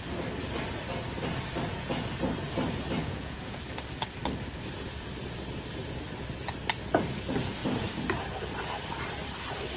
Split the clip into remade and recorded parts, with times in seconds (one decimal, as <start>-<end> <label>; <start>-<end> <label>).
0.0-1.7 recorded; 1.7-2.2 remade; 2.2-3.0 recorded; 3.0-3.6 remade; 3.6-9.8 recorded